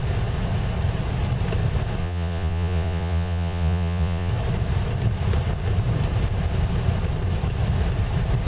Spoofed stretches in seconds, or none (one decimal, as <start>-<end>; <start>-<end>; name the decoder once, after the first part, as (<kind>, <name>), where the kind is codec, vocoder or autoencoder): 2.0-4.3 (vocoder, Vocos)